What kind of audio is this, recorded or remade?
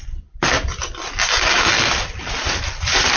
recorded